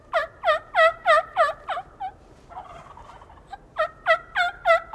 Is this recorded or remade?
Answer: remade